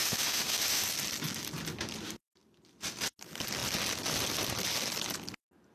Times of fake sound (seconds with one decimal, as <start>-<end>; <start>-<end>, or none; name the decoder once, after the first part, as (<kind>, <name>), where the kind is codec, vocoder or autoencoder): 0.0-0.8 (autoencoder, DAC-VAE)